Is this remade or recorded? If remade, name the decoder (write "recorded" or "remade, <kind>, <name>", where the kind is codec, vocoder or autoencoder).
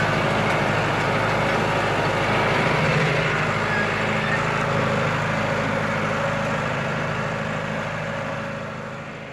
recorded